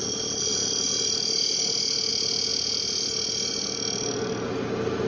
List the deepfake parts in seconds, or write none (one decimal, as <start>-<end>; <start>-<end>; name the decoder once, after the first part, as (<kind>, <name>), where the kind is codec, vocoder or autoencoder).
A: none